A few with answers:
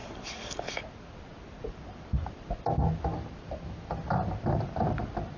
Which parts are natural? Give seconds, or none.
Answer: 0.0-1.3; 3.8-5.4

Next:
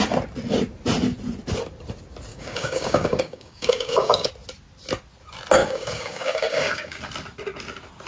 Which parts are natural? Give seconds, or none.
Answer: 0.0-2.3; 4.3-5.6; 7.0-8.1

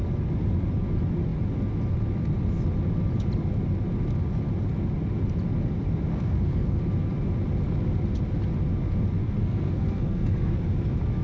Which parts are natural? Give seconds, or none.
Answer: 0.0-6.1; 6.8-9.2; 10.6-11.2

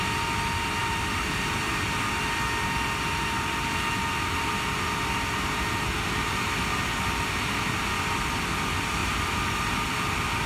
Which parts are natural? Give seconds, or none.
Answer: 0.0-0.8; 1.5-9.0; 9.6-10.5